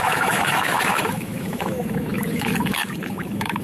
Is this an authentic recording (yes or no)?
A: no